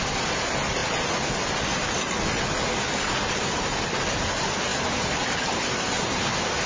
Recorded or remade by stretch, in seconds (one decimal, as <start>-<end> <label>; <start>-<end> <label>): 0.0-6.7 recorded